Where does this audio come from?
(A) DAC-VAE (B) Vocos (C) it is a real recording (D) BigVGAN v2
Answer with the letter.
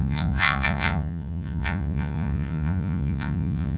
B